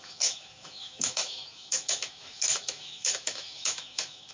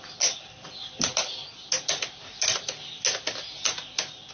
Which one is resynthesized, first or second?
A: first